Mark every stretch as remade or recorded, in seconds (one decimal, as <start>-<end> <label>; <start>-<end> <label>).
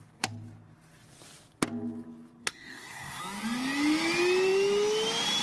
0.0-2.4 recorded; 2.4-3.2 remade; 3.2-5.4 recorded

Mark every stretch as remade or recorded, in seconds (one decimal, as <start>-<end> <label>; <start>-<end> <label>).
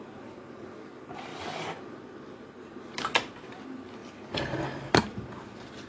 0.0-1.3 recorded; 1.3-3.6 remade; 3.6-4.0 recorded; 4.0-4.9 remade; 4.9-5.9 recorded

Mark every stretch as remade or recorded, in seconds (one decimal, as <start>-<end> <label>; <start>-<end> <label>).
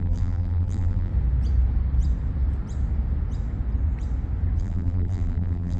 0.0-1.1 remade; 1.1-4.6 recorded; 4.6-5.8 remade